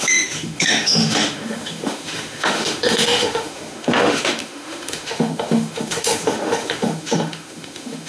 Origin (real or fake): fake